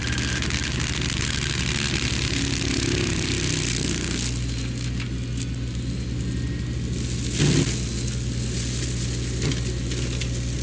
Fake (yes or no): no